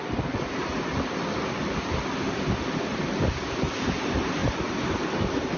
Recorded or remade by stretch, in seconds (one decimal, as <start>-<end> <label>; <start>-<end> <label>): 0.0-5.6 recorded

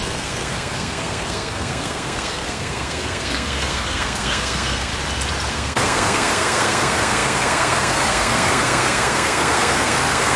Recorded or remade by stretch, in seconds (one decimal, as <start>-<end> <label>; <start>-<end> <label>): 0.0-4.9 remade; 4.9-5.5 recorded; 5.5-10.4 remade